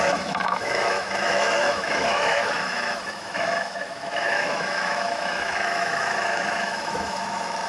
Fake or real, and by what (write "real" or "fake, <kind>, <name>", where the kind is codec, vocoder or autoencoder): fake, autoencoder, DAC-VAE